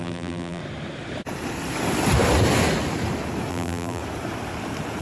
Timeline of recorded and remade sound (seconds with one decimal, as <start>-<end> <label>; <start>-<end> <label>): 0.0-0.6 remade; 0.6-3.5 recorded; 3.5-4.0 remade; 4.0-5.0 recorded